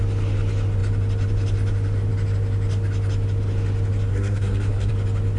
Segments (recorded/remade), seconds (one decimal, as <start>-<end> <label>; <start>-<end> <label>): 0.0-4.1 recorded; 4.1-4.9 remade; 4.9-5.4 recorded